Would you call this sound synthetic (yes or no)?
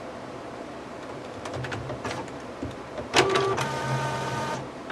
yes